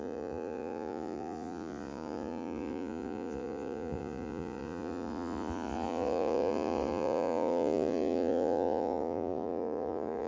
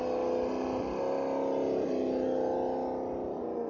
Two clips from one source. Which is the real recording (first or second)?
second